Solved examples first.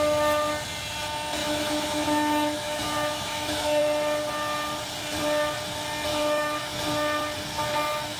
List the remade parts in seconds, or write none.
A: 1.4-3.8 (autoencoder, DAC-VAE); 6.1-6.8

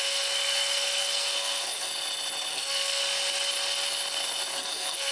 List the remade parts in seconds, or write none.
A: 0.0-1.9 (codec, SNAC); 2.5-3.0; 4.5-5.1

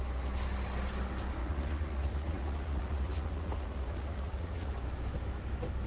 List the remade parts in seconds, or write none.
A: 1.4-4.7 (vocoder, Vocos)

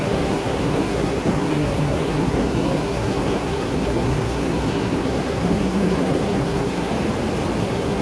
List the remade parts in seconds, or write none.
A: 0.0-6.9 (codec, SNAC); 7.6-8.0

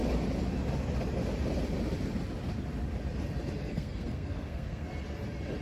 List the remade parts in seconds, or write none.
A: 3.6-4.9 (codec, SNAC)

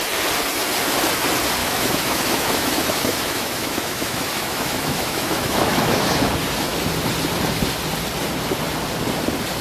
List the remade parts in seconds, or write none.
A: 1.6-6.3 (autoencoder, DAC-VAE)

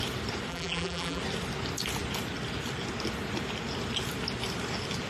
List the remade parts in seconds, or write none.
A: 0.5-1.2 (vocoder, BigVGAN v2)

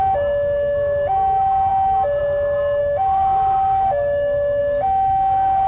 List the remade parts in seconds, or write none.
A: 2.8-4.6 (autoencoder, DAC-VAE)